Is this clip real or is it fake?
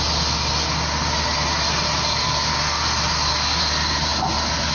real